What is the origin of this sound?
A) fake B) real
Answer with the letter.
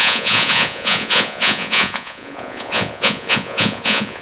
A